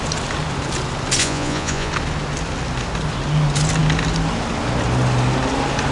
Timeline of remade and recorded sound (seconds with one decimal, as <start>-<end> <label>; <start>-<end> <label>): 0.0-1.2 recorded; 1.2-1.9 remade; 1.9-5.9 recorded